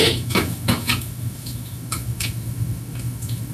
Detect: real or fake fake